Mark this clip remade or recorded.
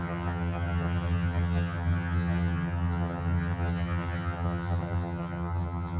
remade